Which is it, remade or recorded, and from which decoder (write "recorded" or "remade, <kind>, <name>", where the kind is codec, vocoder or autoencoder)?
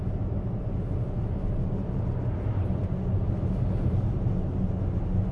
recorded